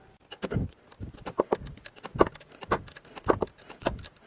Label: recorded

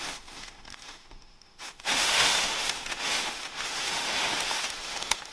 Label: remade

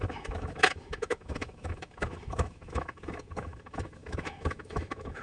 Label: remade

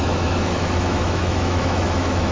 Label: remade